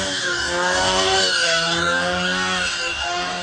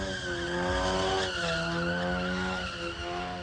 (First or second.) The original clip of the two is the second